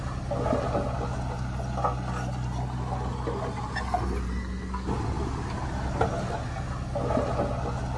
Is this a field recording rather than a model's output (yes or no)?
yes